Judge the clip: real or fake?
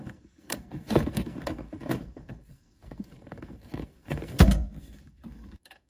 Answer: fake